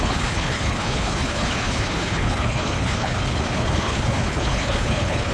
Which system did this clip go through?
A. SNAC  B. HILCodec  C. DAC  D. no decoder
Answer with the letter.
B